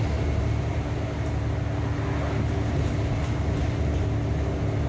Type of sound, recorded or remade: recorded